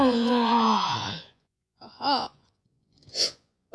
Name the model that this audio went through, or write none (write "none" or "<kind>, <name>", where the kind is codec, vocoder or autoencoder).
vocoder, Vocos